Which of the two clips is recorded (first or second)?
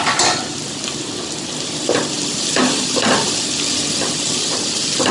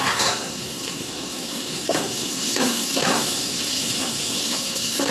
first